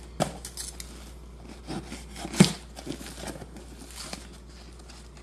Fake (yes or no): no